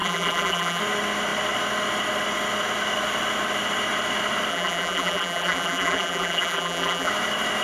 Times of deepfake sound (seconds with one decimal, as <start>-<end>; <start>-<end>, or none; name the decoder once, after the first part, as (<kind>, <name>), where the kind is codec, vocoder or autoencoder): 0.0-0.8 (vocoder, BigVGAN v2); 4.5-7.1